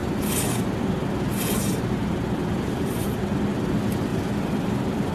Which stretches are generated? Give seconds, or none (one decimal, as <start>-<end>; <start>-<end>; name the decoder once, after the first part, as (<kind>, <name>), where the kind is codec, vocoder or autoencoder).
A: 2.0-3.0 (vocoder, BigVGAN v2); 4.1-5.1